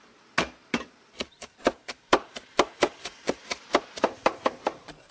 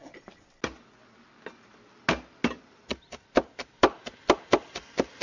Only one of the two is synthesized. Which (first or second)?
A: first